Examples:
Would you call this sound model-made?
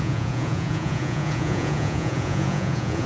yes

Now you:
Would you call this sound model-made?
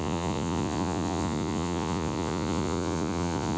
yes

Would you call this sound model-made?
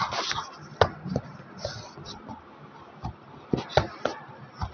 no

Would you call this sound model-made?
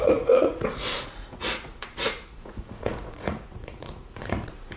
yes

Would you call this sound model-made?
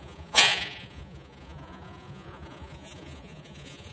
yes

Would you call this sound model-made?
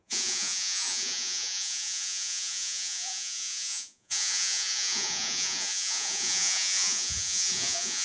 yes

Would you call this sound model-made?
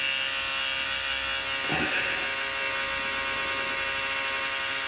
no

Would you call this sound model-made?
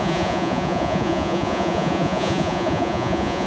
yes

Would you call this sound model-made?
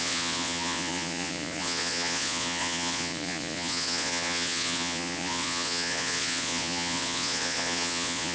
yes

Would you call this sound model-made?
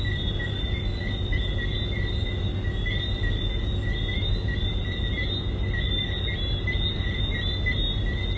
no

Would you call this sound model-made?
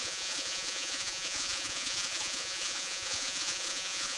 yes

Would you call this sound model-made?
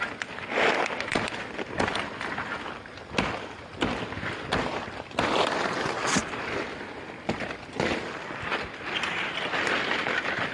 no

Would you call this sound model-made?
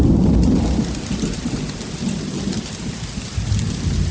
no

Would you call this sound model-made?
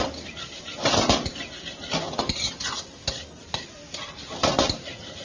no